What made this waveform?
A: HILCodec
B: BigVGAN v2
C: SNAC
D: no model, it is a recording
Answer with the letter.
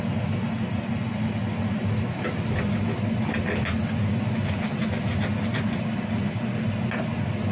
D